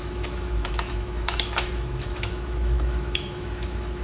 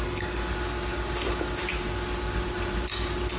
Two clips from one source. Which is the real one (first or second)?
second